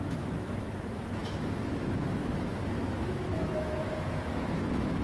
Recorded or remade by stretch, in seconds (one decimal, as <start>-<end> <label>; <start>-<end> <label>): 0.0-5.0 remade